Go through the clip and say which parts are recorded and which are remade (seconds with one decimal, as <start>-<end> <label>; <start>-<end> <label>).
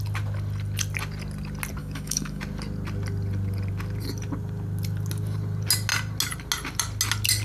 0.0-1.8 recorded; 1.8-2.4 remade; 2.4-7.4 recorded